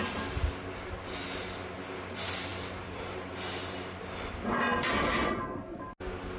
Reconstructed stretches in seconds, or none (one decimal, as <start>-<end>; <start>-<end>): none